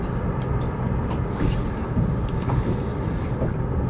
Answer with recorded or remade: recorded